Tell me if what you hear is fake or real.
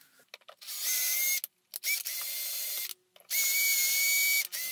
real